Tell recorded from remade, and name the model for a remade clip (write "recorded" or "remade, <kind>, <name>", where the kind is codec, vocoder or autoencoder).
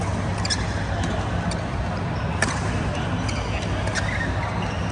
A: recorded